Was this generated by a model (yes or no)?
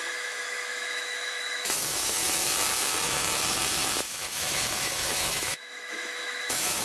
yes